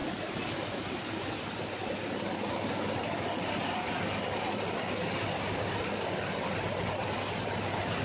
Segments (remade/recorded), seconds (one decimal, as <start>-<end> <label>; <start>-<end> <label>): 0.0-8.0 recorded

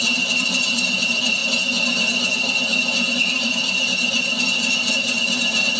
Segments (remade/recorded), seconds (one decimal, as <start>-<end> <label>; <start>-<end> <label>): 0.0-5.8 recorded